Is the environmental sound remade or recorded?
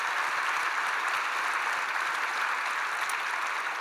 recorded